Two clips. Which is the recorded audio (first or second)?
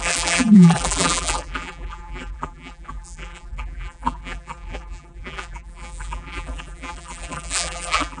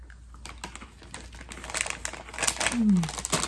second